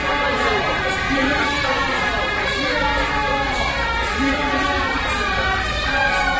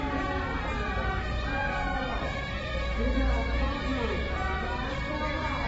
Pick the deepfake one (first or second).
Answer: first